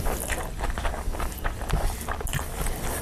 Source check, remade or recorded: recorded